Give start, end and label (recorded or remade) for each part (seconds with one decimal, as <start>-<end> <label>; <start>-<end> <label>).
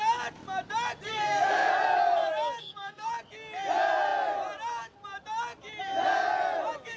0.0-1.1 recorded; 1.1-1.7 remade; 1.7-2.6 recorded; 2.6-3.1 remade; 3.1-7.0 recorded